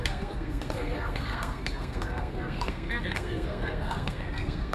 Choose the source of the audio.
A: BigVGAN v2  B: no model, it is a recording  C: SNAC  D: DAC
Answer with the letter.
C